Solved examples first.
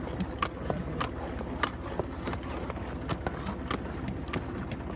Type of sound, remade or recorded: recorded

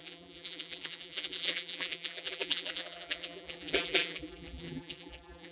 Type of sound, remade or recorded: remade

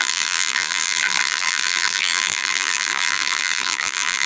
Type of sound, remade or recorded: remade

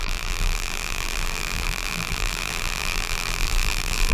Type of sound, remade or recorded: remade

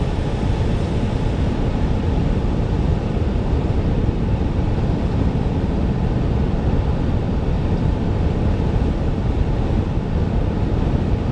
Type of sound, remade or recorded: remade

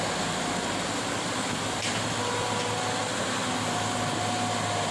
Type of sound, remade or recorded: recorded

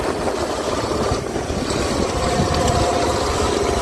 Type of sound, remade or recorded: recorded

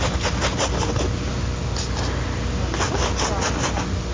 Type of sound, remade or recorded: recorded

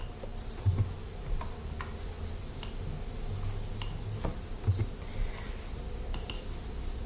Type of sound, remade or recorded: recorded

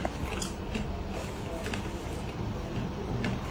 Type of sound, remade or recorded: recorded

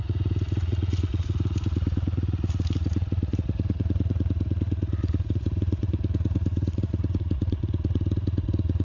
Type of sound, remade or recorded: remade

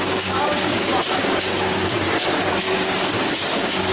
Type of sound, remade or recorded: remade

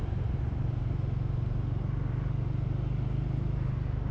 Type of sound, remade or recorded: recorded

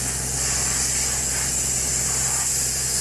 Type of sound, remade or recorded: recorded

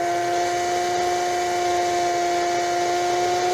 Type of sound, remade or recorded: recorded